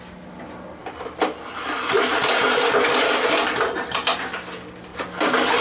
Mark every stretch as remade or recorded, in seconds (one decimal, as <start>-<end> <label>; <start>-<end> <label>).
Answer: 0.0-5.6 recorded

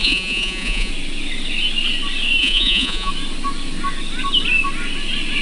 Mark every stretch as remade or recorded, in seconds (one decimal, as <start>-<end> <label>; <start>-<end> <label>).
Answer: 0.0-0.9 remade; 0.9-2.4 recorded; 2.4-3.1 remade; 3.1-5.4 recorded

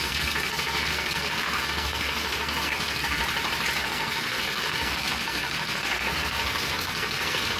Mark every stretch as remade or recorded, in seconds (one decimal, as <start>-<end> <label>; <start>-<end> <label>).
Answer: 0.0-3.2 remade; 3.2-3.8 recorded; 3.8-7.6 remade

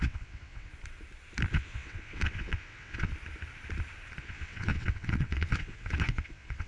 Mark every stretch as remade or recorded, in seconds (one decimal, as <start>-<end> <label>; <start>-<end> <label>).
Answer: 0.0-0.7 remade; 0.7-1.5 recorded; 1.5-3.1 remade; 3.1-4.2 recorded; 4.2-6.7 remade

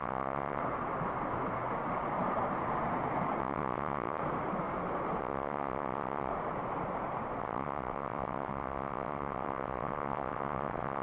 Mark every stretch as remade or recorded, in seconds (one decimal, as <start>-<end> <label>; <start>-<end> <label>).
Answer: 0.0-0.6 remade; 0.6-3.4 recorded; 3.4-4.2 remade; 4.2-5.2 recorded; 5.2-6.3 remade; 6.3-7.4 recorded; 7.4-11.0 remade